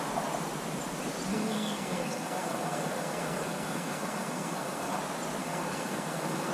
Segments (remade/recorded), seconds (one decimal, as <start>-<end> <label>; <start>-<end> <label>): 0.0-1.3 recorded; 1.3-5.0 remade; 5.0-5.4 recorded; 5.4-6.5 remade